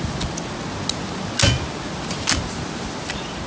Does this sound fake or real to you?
real